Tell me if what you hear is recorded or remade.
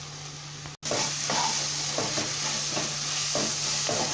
recorded